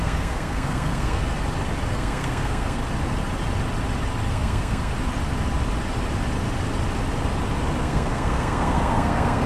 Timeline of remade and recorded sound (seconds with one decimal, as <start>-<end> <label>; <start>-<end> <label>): 0.0-1.2 remade; 1.2-1.9 recorded; 1.9-2.8 remade; 2.8-4.3 recorded; 4.3-4.9 remade; 4.9-7.8 recorded; 7.8-9.5 remade